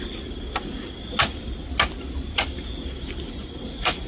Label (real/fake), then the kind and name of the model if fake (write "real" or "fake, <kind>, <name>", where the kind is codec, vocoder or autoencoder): real